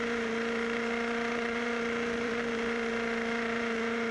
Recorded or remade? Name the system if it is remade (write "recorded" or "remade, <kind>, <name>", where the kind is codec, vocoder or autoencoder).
remade, vocoder, BigVGAN v2